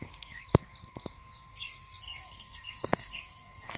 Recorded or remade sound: remade